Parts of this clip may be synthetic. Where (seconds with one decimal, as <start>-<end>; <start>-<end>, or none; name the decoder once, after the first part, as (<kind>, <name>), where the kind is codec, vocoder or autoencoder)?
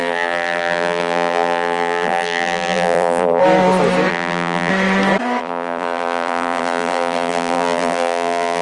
0.0-3.4 (vocoder, BigVGAN v2); 4.1-4.7; 5.4-8.6